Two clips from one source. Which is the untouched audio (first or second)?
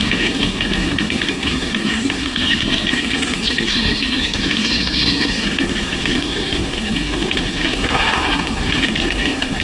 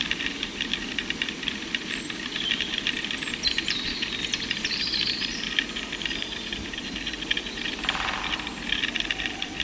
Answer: second